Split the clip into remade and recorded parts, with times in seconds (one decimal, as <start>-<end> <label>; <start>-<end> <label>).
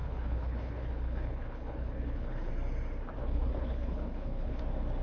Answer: 0.0-2.5 remade; 2.5-3.2 recorded; 3.2-4.6 remade; 4.6-5.0 recorded